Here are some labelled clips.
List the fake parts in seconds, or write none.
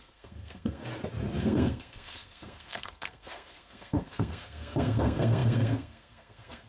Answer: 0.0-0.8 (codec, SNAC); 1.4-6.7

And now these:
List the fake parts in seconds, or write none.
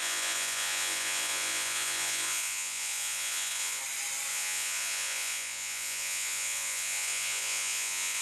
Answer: 0.0-3.8 (vocoder, Vocos); 4.3-8.2